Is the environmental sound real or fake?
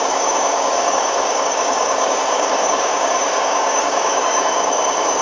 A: fake